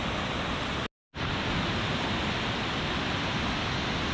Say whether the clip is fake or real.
real